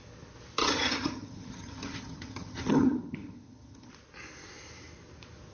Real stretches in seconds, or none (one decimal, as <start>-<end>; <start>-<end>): 0.0-0.6; 3.9-5.5